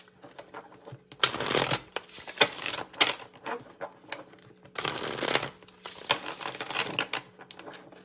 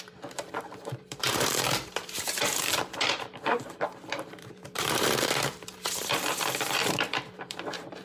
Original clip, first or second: first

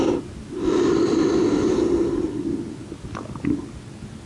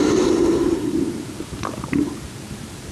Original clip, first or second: first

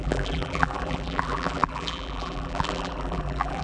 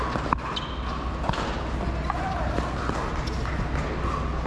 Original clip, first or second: second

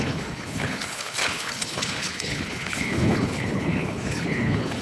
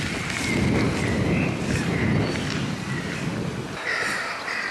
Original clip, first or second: second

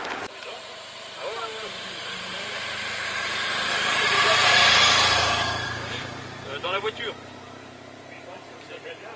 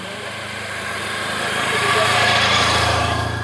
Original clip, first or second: second